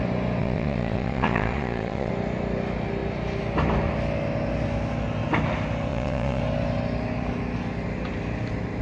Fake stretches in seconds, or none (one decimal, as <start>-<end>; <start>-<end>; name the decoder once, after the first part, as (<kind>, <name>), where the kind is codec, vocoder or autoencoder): 0.4-2.1 (vocoder, Vocos); 5.9-6.4